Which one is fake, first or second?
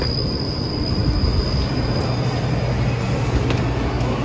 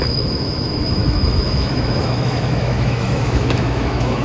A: second